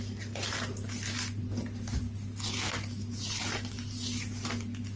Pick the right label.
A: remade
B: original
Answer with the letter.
B